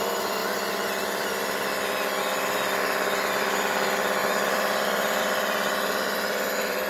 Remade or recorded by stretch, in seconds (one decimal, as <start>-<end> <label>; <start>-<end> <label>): 0.0-4.2 recorded; 4.2-5.2 remade; 5.2-6.9 recorded